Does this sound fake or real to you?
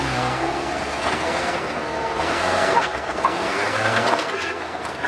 fake